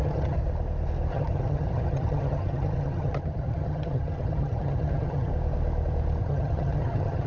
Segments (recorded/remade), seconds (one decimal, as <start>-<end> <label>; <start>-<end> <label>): 0.0-0.4 remade; 0.4-1.1 recorded; 1.1-5.3 remade; 5.3-6.2 recorded; 6.2-7.3 remade